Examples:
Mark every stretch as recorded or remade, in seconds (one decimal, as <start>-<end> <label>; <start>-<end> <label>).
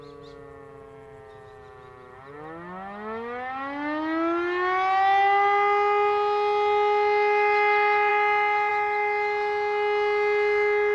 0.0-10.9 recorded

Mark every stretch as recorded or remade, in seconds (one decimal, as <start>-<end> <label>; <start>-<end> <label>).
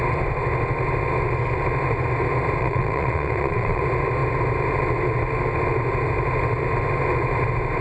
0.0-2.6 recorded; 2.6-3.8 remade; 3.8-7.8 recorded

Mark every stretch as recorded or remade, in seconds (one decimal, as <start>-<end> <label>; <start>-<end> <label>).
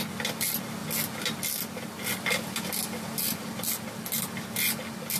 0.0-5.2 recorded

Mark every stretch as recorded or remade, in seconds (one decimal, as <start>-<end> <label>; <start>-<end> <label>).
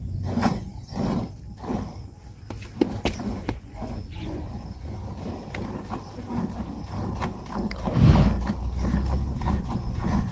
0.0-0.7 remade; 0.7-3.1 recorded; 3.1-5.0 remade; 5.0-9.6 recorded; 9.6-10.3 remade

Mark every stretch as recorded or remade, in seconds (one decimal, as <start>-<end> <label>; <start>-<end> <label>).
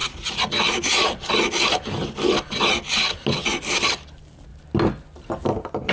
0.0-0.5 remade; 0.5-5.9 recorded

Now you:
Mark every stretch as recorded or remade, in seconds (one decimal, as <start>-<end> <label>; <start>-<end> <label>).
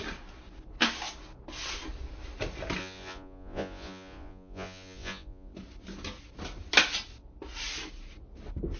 0.0-2.8 recorded; 2.8-5.5 remade; 5.5-8.8 recorded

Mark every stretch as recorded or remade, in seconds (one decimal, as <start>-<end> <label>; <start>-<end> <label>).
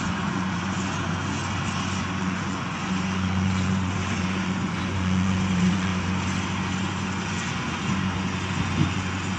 0.0-1.4 remade; 1.4-2.0 recorded; 2.0-5.9 remade; 5.9-6.8 recorded; 6.8-9.4 remade